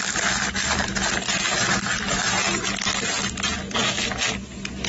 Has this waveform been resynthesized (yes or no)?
no